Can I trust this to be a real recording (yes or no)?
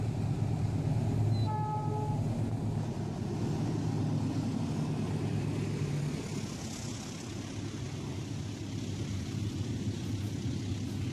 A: yes